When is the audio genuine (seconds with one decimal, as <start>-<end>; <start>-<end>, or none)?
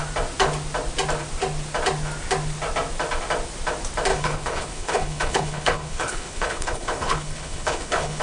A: 0.0-4.1